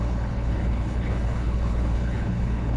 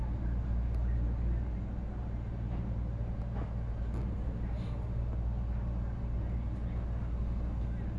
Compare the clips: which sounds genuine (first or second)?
second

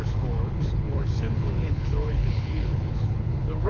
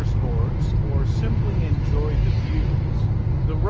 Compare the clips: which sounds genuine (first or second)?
second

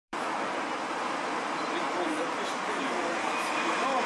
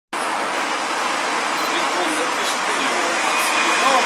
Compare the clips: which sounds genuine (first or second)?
second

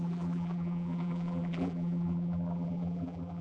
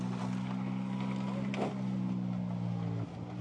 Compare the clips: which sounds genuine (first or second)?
second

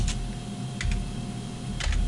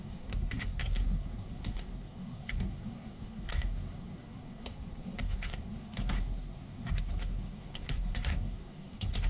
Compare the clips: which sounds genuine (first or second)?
first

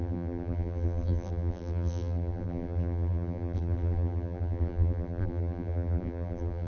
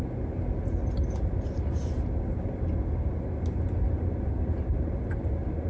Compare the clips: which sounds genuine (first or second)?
second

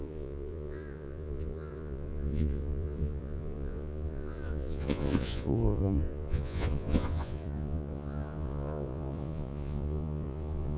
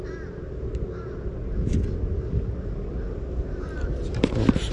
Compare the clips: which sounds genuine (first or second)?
second